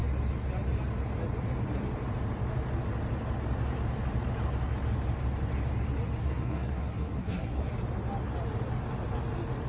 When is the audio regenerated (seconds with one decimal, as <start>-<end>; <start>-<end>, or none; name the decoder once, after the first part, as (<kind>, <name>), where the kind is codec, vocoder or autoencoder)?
6.2-7.7 (codec, SNAC)